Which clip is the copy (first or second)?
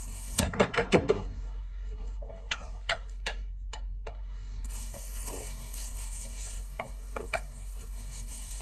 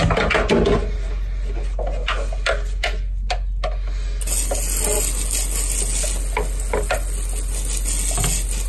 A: first